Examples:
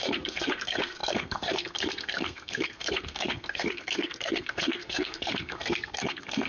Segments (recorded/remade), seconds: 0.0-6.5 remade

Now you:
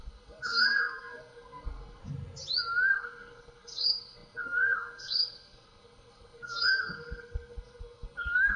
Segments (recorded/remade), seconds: 0.0-2.0 remade; 2.0-2.9 recorded; 2.9-8.6 remade

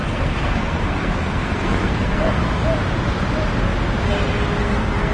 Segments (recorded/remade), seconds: 0.0-2.6 remade; 2.6-4.6 recorded; 4.6-5.1 remade

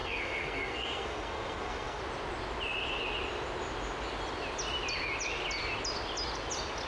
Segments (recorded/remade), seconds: 0.0-2.0 remade; 2.0-6.9 recorded

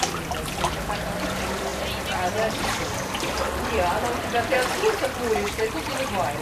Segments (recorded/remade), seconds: 0.0-6.4 recorded

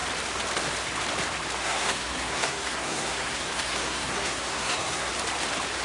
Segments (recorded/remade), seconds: 0.0-1.6 recorded; 1.6-5.1 remade; 5.1-5.8 recorded

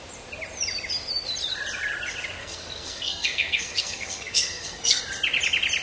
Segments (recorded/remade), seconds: 0.0-2.4 recorded; 2.4-5.0 remade; 5.0-5.8 recorded

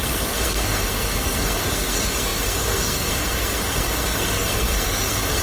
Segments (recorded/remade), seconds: 0.0-5.4 remade